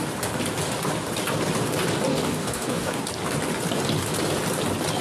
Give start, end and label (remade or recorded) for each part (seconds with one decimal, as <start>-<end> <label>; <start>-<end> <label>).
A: 0.0-2.1 recorded; 2.1-3.0 remade; 3.0-5.0 recorded

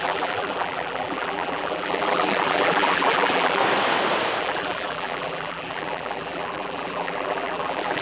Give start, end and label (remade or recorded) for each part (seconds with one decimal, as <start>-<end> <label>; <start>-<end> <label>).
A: 0.0-3.6 remade; 3.6-4.4 recorded; 4.4-8.0 remade

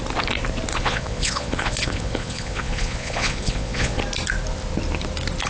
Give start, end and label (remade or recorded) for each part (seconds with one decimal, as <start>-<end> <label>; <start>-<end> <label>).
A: 0.0-0.7 recorded; 0.7-4.0 remade; 4.0-5.5 recorded

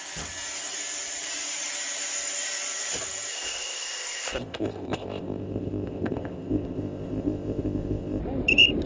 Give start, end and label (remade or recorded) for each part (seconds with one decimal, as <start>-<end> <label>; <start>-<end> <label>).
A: 0.0-3.3 recorded; 3.3-8.2 remade; 8.2-8.9 recorded

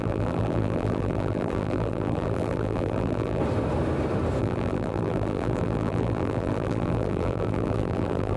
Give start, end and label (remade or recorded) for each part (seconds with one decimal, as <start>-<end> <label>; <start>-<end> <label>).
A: 0.0-3.4 remade; 3.4-4.4 recorded; 4.4-8.4 remade